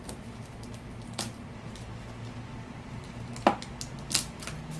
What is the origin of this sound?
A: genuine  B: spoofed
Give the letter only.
A